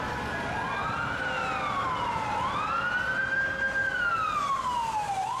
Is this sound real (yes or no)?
yes